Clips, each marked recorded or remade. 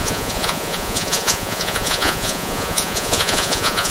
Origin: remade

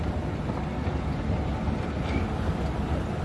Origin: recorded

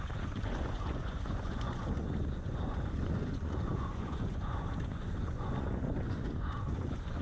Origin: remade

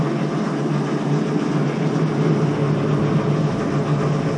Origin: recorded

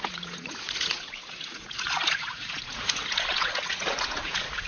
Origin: remade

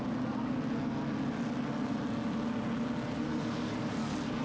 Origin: recorded